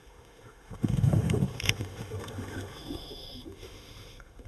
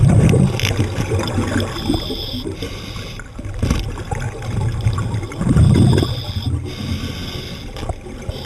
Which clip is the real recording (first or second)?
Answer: second